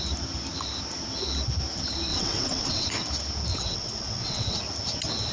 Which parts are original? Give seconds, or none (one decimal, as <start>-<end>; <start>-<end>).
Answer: 0.0-2.1; 2.9-3.5; 4.6-5.3